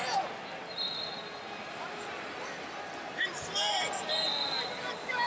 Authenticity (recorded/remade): recorded